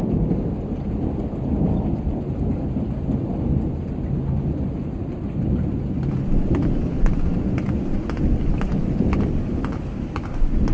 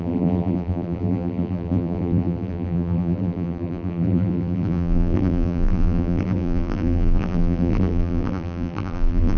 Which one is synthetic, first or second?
second